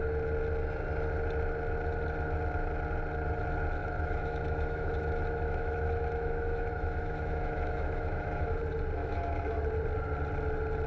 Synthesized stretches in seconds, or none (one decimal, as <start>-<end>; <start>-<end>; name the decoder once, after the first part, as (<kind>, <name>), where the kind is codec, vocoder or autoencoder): 3.8-8.6 (autoencoder, DAC-VAE); 9.0-9.6